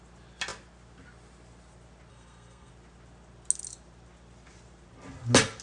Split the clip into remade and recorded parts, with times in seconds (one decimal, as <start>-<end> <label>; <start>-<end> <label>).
0.0-2.1 recorded; 2.1-2.7 remade; 2.7-5.6 recorded